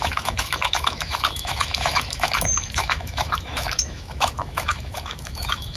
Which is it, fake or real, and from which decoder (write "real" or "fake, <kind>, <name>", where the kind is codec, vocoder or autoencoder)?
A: fake, autoencoder, DAC-VAE